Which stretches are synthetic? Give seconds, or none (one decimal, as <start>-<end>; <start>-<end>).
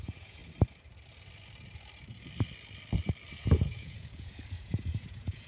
0.0-0.4; 3.4-5.5